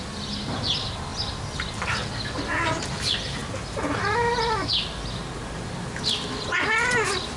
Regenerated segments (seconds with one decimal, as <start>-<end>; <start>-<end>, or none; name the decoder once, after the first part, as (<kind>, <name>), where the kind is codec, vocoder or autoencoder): none